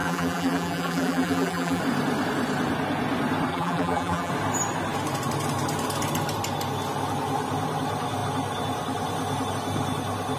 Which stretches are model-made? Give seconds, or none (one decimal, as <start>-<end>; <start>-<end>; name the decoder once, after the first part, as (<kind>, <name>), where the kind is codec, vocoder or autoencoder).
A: 0.0-1.8 (vocoder, BigVGAN v2); 3.5-4.3